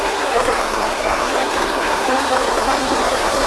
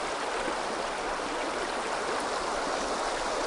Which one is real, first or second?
second